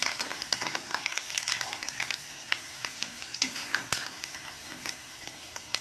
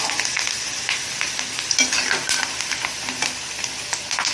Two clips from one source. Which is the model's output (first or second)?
first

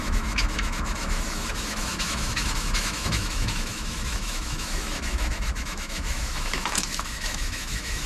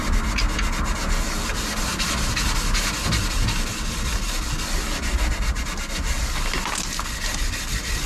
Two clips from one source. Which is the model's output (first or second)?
first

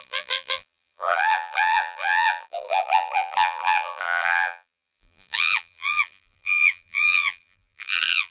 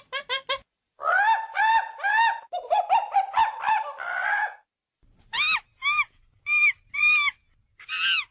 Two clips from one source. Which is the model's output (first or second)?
first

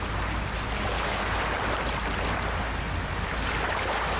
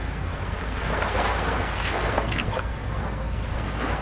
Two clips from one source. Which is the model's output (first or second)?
second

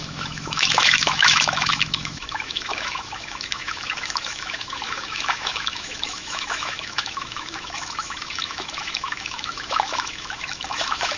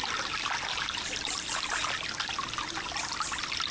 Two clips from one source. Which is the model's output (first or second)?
first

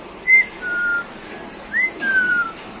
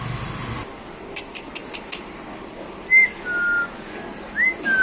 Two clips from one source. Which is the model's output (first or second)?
first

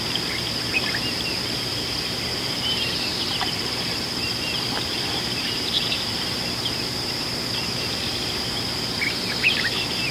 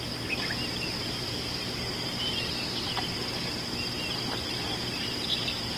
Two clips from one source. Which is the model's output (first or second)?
first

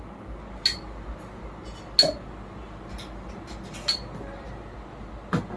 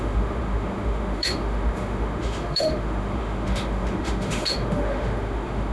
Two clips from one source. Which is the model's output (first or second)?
second